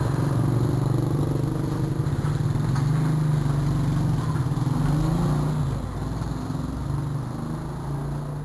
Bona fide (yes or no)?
yes